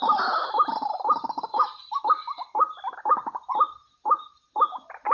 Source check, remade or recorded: recorded